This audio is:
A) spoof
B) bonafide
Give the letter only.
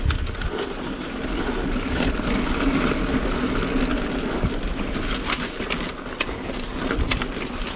B